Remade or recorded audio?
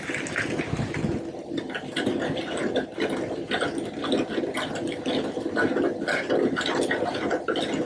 recorded